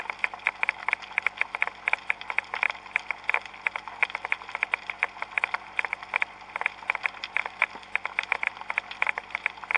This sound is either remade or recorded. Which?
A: recorded